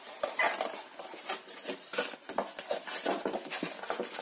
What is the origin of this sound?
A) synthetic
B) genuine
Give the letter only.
B